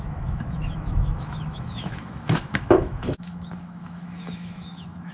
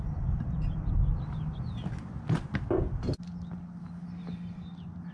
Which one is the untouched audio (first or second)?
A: second